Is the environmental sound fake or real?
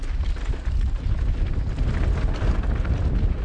real